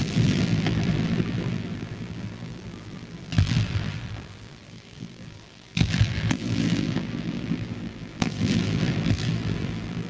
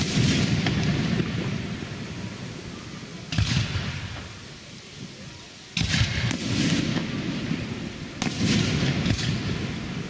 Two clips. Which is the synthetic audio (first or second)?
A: first